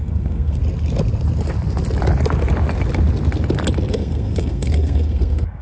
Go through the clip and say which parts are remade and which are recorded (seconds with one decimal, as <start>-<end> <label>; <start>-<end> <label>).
0.0-0.6 remade; 0.6-3.9 recorded; 3.9-5.6 remade